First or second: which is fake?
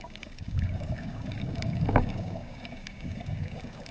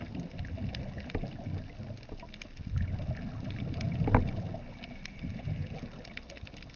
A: first